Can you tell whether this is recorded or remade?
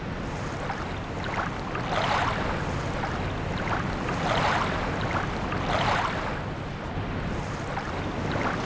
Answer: recorded